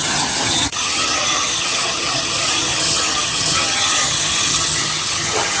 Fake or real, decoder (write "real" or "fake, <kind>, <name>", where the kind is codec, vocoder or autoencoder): fake, vocoder, HiFi-GAN